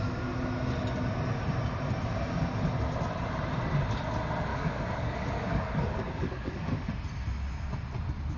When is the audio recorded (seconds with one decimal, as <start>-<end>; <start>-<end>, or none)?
0.0-4.5; 6.9-8.4